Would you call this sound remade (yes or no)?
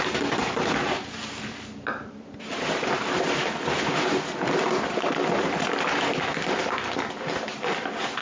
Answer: no